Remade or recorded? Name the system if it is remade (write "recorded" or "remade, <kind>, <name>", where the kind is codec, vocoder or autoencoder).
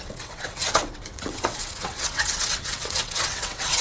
remade, vocoder, WaveNeXt